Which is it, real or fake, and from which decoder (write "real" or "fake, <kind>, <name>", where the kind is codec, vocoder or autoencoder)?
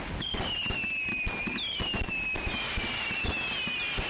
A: real